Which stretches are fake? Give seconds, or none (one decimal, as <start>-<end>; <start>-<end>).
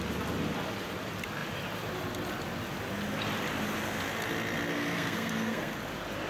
4.7-5.7